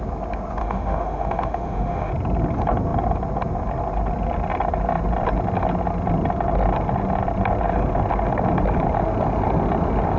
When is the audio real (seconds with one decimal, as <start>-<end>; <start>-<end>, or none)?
0.0-0.6; 2.1-10.2

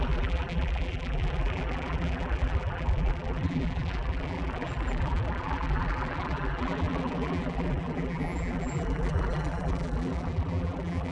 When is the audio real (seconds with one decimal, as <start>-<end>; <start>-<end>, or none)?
none